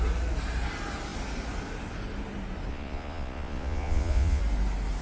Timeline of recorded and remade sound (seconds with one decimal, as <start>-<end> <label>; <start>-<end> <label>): 0.0-2.7 recorded; 2.7-4.4 remade; 4.4-5.0 recorded